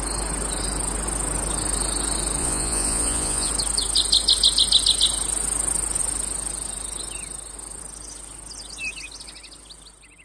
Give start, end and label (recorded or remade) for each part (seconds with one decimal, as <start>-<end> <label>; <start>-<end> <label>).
0.0-2.4 recorded; 2.4-3.5 remade; 3.5-10.2 recorded